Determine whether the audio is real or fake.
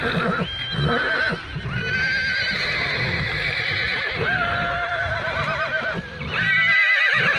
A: real